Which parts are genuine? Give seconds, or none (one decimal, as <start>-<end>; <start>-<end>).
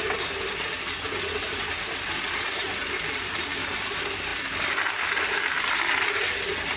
0.0-6.8